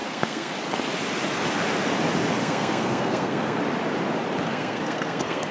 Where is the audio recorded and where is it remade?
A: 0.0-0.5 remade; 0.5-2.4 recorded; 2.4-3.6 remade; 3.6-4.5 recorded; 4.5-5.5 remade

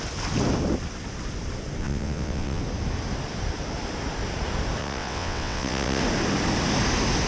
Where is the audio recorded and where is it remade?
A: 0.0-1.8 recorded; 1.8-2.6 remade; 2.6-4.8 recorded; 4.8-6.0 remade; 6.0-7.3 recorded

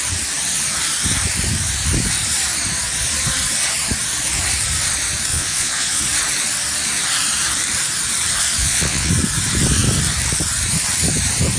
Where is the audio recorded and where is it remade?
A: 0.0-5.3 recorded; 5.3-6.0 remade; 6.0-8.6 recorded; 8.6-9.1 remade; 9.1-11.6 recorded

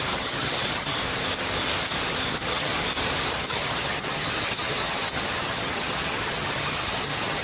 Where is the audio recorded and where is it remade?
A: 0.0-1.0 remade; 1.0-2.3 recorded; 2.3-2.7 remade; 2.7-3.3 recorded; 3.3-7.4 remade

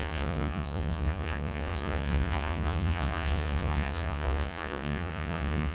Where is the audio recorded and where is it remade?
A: 0.0-5.7 remade